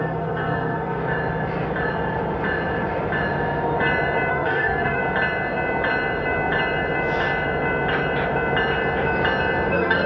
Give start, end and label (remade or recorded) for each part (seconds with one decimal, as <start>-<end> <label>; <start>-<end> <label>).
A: 0.0-1.0 remade; 1.0-4.3 recorded; 4.3-5.0 remade; 5.0-9.7 recorded; 9.7-10.1 remade